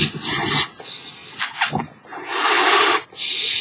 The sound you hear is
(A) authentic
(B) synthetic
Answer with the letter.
A